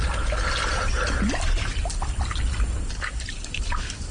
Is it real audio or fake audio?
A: real